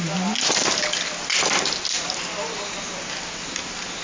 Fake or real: real